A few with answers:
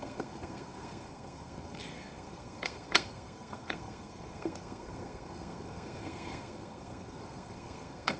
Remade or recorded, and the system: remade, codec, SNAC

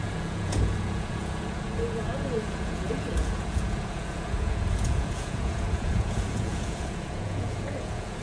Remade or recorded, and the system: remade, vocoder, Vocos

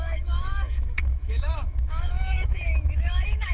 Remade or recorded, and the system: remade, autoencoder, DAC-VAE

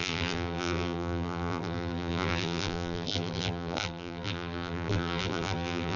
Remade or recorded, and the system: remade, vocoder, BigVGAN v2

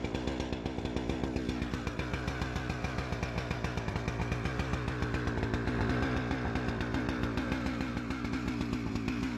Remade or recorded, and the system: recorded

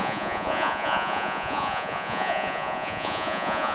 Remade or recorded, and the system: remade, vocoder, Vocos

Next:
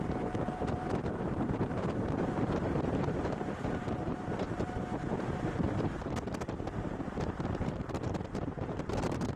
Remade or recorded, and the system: remade, vocoder, BigVGAN v2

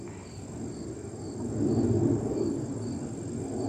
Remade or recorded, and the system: recorded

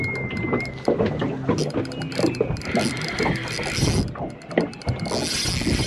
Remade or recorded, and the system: recorded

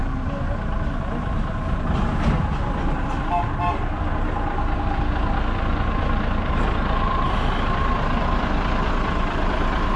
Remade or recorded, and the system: recorded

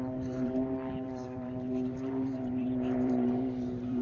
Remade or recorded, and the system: remade, vocoder, BigVGAN v2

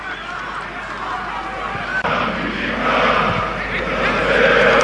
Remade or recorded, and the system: recorded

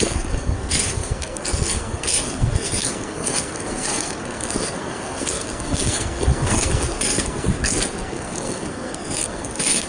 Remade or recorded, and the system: remade, codec, SNAC